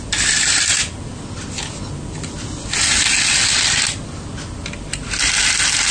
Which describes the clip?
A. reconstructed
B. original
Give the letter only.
B